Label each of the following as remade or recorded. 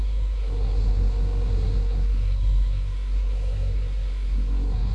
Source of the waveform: remade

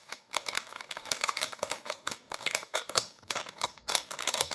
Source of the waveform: remade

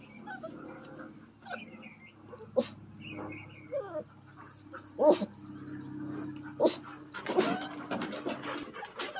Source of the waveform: recorded